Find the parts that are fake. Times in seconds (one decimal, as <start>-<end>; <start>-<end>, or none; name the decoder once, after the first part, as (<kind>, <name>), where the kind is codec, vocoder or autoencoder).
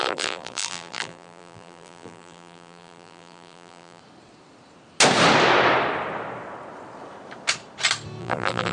0.0-4.0 (vocoder, BigVGAN v2); 8.2-8.7